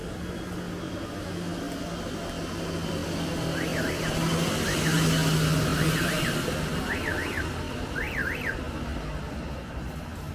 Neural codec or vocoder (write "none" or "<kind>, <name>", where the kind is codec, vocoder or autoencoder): none